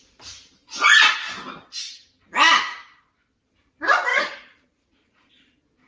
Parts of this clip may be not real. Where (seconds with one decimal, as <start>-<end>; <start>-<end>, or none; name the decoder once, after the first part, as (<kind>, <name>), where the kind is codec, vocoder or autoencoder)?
4.1-5.3 (vocoder, Vocos)